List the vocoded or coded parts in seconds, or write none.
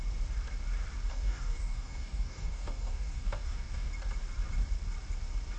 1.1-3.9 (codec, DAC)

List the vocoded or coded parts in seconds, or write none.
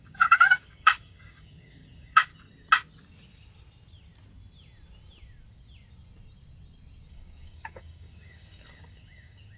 0.0-2.3 (codec, DAC); 7.1-9.6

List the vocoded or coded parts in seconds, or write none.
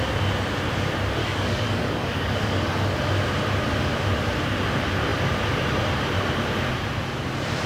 1.2-2.8 (codec, DAC)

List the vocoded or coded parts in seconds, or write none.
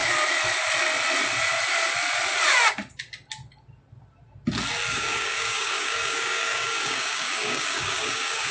4.9-8.5 (codec, DAC)